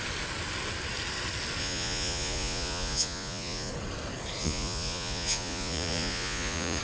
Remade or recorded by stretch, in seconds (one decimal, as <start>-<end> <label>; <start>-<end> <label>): 0.0-1.6 recorded; 1.6-3.7 remade; 3.7-4.4 recorded; 4.4-6.8 remade